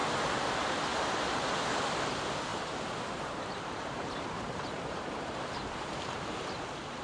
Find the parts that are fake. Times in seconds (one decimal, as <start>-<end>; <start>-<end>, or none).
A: 2.5-6.0